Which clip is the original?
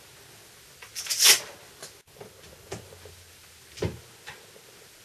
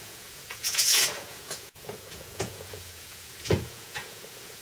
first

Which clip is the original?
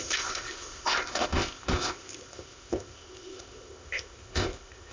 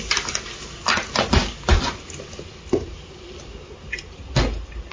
second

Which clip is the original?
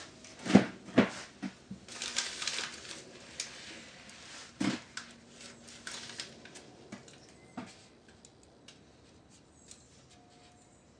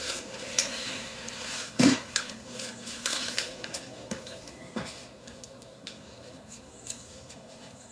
first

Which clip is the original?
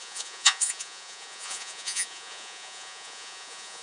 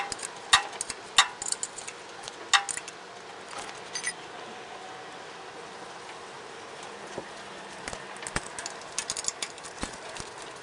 second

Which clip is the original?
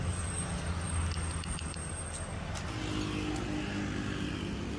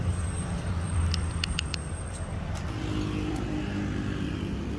first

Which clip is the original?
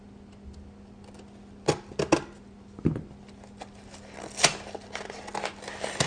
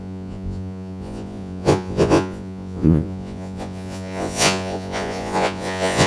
first